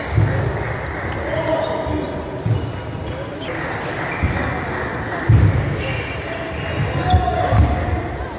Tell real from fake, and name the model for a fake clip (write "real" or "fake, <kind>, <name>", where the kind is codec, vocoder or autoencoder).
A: real